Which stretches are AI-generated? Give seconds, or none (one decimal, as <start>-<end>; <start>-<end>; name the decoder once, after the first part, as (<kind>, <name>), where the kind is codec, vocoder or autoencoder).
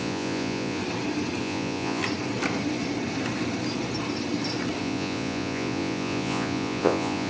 0.0-0.8 (vocoder, Vocos); 1.4-2.0; 4.8-7.3